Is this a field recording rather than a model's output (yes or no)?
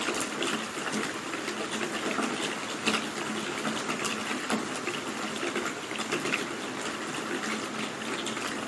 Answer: yes